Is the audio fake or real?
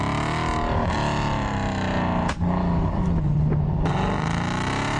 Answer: real